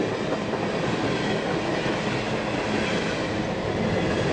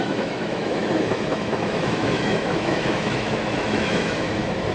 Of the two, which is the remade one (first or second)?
second